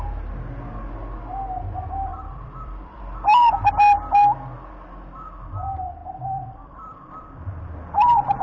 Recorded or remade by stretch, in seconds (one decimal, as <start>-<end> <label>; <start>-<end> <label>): 0.0-2.1 recorded; 2.1-3.0 remade; 3.0-6.0 recorded; 6.0-7.0 remade; 7.0-8.4 recorded